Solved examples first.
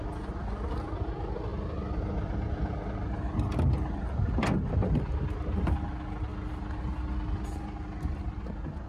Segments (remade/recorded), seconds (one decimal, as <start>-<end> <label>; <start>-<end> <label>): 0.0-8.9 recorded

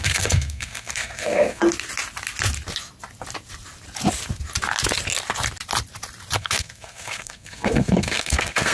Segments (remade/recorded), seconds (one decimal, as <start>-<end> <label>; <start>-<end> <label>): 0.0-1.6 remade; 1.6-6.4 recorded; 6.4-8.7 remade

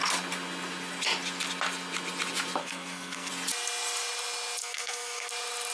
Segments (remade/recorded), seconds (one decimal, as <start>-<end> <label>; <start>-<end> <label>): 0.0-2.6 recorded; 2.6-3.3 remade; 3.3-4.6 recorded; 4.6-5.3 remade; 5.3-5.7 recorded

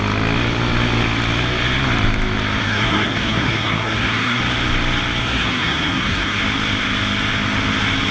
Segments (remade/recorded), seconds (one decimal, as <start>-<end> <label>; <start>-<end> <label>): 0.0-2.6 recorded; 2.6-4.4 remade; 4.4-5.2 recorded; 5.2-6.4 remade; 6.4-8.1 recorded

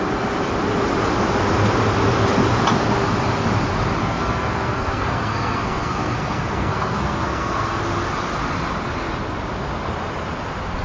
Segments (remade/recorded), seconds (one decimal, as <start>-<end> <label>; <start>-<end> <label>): 0.0-4.0 recorded; 4.0-7.8 remade; 7.8-10.8 recorded

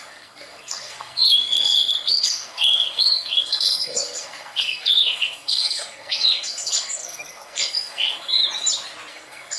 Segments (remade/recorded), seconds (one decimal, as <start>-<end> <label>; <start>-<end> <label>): 0.0-8.4 remade; 8.4-9.1 recorded; 9.1-9.6 remade

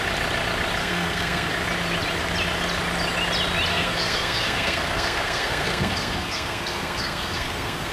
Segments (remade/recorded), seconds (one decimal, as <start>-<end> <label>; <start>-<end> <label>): 0.0-0.8 recorded; 0.8-1.5 remade; 1.5-3.7 recorded; 3.7-7.9 remade